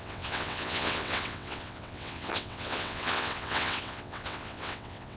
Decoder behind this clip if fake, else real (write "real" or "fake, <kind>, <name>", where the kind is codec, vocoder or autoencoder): fake, vocoder, WaveNeXt